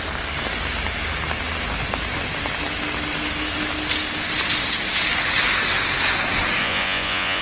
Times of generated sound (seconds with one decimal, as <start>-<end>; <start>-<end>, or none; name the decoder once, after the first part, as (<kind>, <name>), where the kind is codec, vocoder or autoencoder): 6.6-7.4 (vocoder, Vocos)